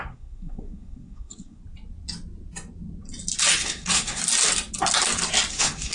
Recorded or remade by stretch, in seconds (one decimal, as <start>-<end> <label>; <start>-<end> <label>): 0.0-1.6 remade; 1.6-3.6 recorded; 3.6-4.2 remade; 4.2-5.5 recorded; 5.5-5.9 remade